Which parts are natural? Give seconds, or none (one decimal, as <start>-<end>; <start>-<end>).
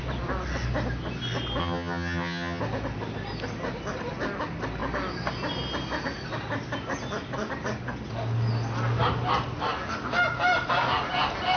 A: 0.0-1.6; 2.6-11.6